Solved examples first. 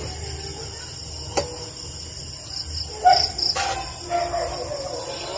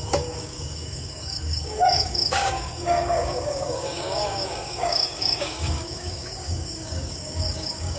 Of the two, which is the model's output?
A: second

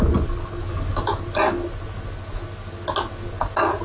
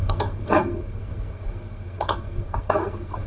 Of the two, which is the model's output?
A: second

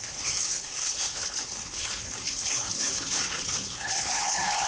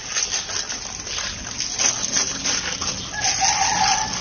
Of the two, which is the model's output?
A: first